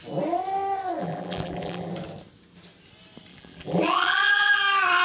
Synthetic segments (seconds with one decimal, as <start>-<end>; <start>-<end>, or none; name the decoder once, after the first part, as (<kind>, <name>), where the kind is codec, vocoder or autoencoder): 1.0-1.9 (vocoder, BigVGAN v2); 3.3-4.6